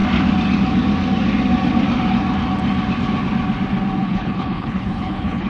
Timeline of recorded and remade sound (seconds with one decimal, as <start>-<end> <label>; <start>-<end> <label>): 0.0-4.0 recorded; 4.0-5.5 remade